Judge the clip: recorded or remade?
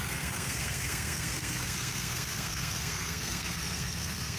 remade